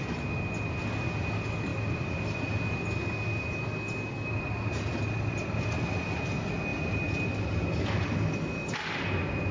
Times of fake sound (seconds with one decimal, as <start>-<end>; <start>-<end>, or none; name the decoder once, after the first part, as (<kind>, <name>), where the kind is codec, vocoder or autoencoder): none